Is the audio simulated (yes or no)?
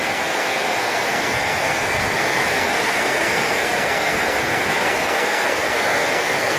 yes